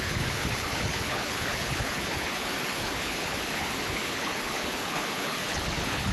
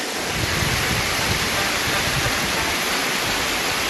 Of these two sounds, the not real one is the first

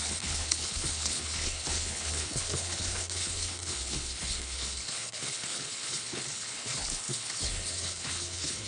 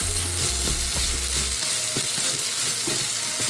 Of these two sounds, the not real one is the first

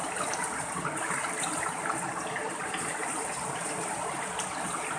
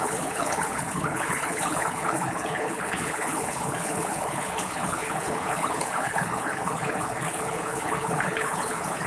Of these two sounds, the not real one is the second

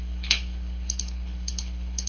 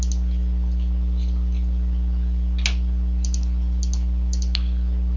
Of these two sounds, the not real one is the first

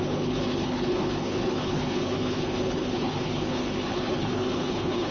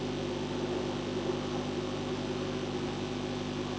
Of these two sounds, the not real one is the first